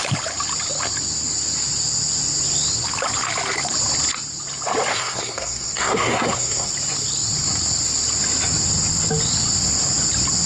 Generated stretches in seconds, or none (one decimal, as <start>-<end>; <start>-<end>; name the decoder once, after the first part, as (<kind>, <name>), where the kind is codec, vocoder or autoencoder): 4.9-6.7 (codec, SNAC)